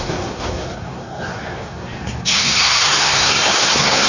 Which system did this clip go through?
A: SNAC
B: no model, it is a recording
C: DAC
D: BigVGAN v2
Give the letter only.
A